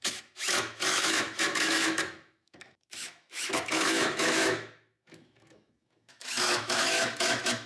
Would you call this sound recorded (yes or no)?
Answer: no